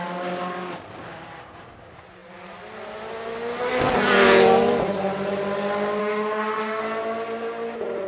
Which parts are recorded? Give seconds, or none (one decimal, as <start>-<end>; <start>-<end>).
0.0-6.0; 6.8-8.1